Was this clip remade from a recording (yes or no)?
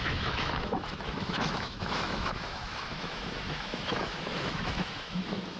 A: yes